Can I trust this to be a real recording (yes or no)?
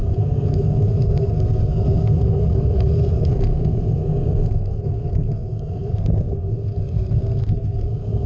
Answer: no